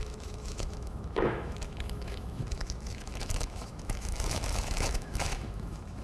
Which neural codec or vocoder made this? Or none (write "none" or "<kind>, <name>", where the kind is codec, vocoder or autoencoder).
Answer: autoencoder, DAC-VAE